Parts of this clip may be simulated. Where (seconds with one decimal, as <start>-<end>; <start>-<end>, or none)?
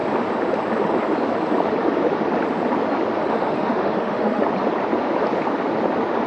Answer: 3.2-4.4